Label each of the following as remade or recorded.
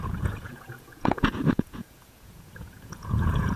remade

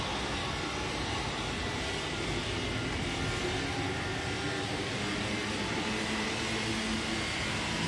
recorded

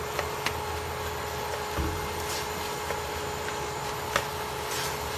recorded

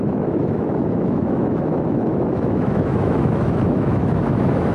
remade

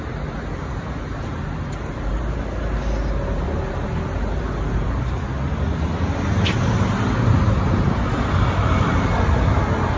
recorded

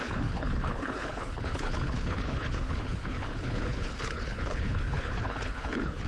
remade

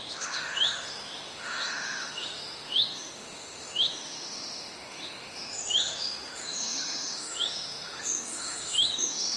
remade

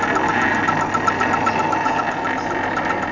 recorded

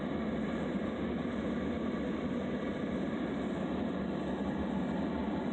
remade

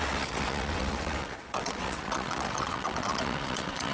remade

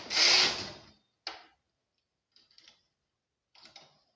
recorded